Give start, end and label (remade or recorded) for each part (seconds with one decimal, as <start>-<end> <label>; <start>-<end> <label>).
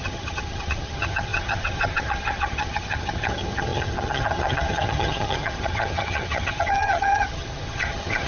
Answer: 0.0-8.3 remade